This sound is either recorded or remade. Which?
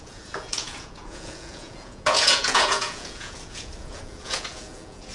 remade